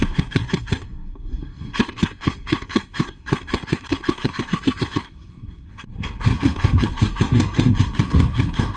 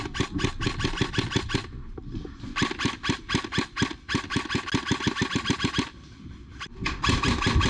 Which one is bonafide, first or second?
second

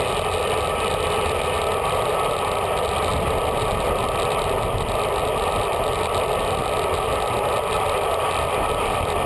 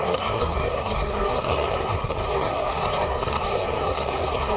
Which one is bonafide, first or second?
first